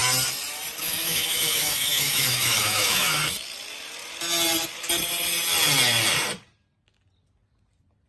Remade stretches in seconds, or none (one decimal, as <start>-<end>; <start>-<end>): 0.8-3.2